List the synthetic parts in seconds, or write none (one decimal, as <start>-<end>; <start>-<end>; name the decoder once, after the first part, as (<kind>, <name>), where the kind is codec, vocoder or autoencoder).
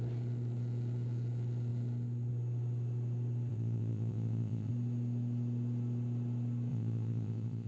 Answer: 3.5-4.7 (vocoder, Vocos); 6.7-7.7